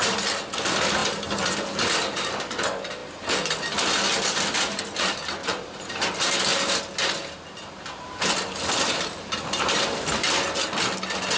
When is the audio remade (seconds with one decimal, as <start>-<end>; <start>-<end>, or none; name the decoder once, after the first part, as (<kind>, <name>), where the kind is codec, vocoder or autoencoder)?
5.4-5.9 (vocoder, BigVGAN v2)